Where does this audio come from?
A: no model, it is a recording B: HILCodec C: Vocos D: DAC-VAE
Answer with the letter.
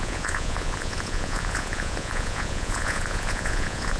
C